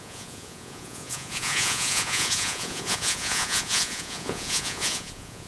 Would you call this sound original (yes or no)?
no